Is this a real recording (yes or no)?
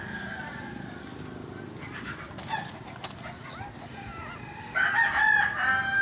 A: yes